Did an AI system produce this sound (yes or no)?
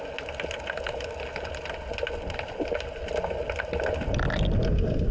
no